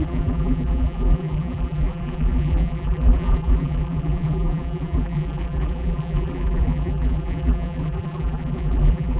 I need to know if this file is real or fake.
fake